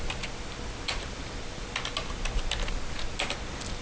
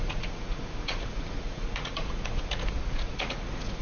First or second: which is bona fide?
first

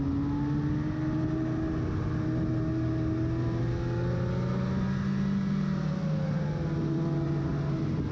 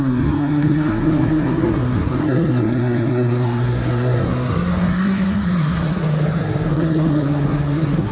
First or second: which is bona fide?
first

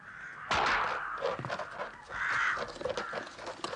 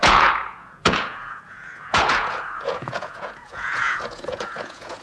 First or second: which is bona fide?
first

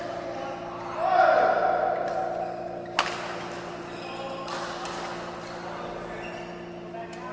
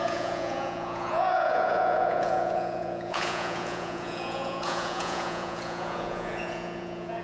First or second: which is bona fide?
first